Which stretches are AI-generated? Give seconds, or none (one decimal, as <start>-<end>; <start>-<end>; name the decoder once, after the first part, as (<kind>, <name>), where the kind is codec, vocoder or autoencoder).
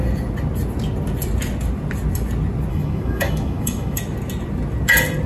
2.7-4.0 (autoencoder, DAC-VAE)